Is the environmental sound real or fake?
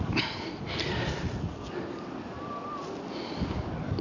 real